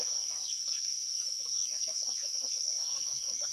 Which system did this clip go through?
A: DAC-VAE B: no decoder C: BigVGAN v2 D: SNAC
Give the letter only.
D